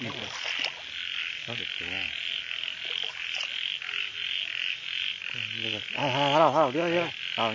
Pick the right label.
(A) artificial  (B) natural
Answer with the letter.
B